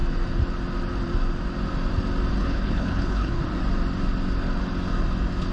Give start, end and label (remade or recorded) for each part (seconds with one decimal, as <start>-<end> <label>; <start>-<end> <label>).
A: 0.0-2.4 recorded; 2.4-3.4 remade; 3.4-5.5 recorded

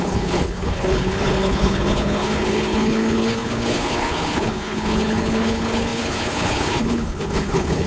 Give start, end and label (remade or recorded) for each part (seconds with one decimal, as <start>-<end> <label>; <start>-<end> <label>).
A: 0.0-7.9 remade

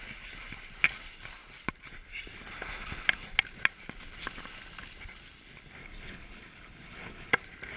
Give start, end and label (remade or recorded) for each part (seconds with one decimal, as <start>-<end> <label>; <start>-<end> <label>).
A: 0.0-5.8 recorded; 5.8-7.3 remade; 7.3-7.8 recorded

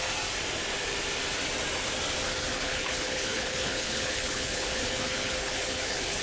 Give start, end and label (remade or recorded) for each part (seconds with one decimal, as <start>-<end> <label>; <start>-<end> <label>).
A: 0.0-2.5 recorded; 2.5-6.2 remade

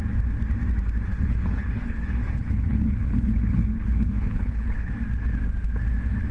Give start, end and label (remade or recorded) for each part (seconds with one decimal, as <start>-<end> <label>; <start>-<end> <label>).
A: 0.0-1.1 recorded; 1.1-4.9 remade; 4.9-6.3 recorded

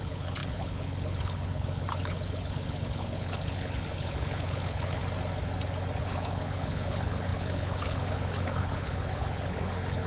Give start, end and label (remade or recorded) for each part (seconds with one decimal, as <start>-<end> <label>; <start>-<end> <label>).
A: 0.0-5.0 remade; 5.0-6.0 recorded; 6.0-10.1 remade